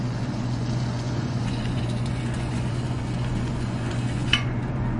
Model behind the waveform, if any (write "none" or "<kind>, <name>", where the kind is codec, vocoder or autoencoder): vocoder, Vocos